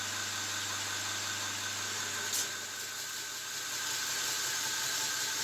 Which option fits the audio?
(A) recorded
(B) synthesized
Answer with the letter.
A